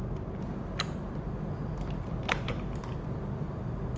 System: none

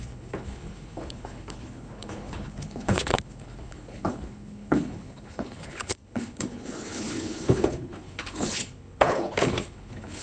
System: codec, HILCodec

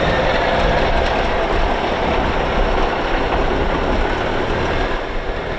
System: none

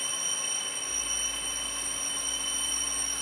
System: none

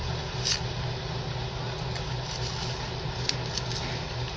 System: none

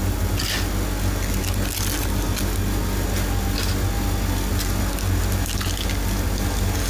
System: none